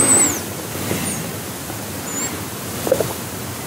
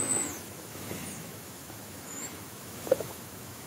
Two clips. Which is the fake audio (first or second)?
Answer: second